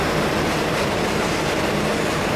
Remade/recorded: remade